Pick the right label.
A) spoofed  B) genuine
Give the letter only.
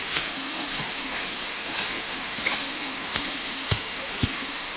A